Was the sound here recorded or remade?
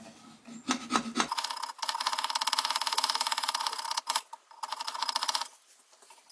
recorded